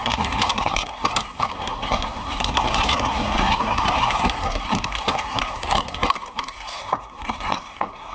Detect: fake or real fake